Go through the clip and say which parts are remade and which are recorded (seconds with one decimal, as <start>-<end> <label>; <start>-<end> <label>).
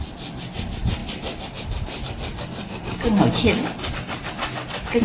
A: 0.0-5.0 recorded